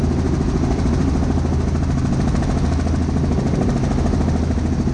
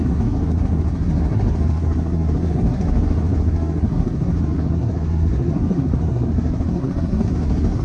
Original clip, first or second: first